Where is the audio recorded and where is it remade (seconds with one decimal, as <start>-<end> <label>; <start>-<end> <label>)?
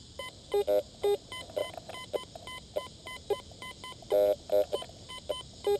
0.0-5.8 recorded